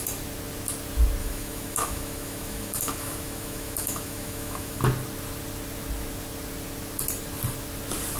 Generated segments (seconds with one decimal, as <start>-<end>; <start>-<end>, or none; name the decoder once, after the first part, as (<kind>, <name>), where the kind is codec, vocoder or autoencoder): 1.2-4.8 (autoencoder, DAC-VAE)